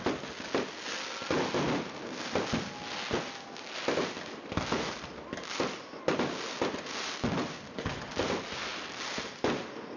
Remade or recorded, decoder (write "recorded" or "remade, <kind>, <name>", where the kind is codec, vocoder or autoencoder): recorded